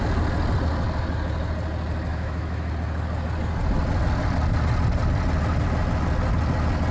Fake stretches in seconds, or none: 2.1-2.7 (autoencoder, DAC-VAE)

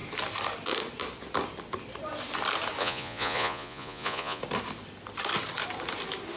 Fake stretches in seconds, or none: 2.8-4.4 (vocoder, Vocos)